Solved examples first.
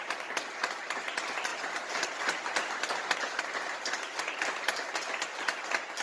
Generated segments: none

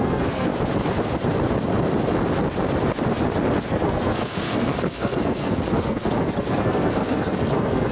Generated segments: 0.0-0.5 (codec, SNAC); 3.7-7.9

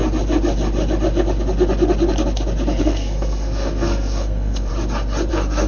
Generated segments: 2.8-4.7 (codec, SNAC); 5.3-5.7

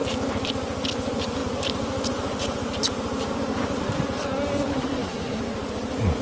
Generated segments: 4.7-5.4 (codec, SNAC)

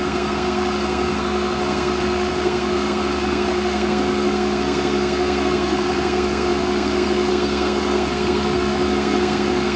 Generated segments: 0.0-9.8 (codec, SNAC)